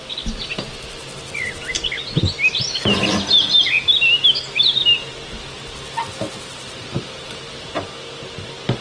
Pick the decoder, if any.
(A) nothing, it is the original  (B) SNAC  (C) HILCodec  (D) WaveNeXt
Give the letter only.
A